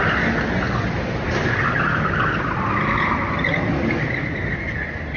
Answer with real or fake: real